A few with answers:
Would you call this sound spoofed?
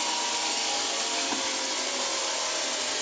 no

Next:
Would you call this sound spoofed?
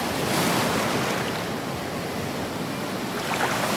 no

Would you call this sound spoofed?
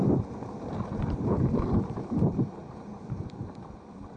no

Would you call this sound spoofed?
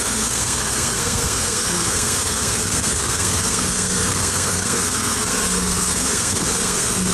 yes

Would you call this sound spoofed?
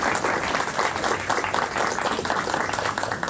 no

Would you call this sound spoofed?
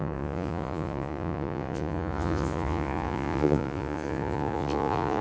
yes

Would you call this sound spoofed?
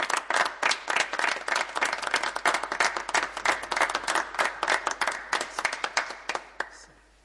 no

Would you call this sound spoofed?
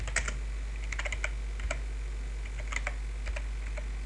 no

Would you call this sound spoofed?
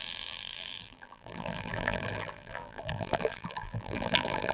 yes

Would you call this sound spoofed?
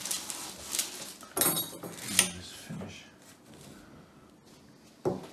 no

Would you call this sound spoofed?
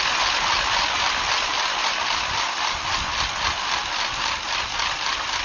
no